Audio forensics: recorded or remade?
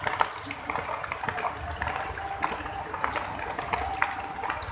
recorded